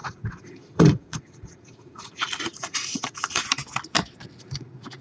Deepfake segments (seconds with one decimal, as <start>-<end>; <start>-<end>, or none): 0.0-3.4; 4.4-5.0